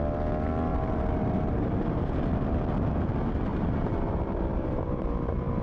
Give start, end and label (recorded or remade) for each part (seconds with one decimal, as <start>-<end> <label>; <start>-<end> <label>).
0.0-0.7 recorded; 0.7-2.0 remade; 2.0-3.5 recorded; 3.5-5.6 remade